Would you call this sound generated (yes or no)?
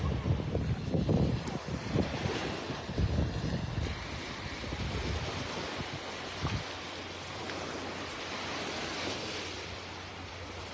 no